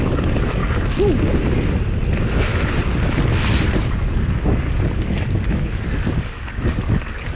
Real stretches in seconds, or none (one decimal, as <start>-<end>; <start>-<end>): 0.6-4.5